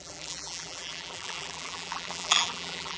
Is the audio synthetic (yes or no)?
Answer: yes